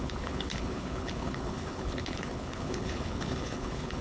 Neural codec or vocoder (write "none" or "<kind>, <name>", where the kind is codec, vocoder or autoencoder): codec, HILCodec